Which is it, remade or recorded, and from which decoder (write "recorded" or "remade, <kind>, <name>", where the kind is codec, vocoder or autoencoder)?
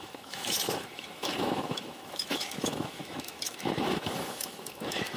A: remade, autoencoder, DAC-VAE